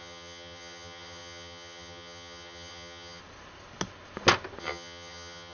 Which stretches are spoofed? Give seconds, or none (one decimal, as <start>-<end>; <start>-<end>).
0.0-3.2; 4.6-5.5